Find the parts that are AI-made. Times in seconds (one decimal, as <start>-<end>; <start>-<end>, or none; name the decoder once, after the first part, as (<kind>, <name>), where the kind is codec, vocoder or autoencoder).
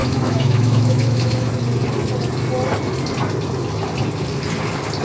0.0-1.5 (autoencoder, DAC-VAE)